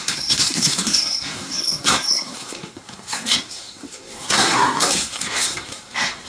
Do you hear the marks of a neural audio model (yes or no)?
yes